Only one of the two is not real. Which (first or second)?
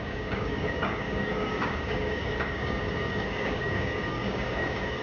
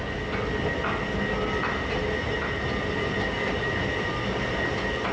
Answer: first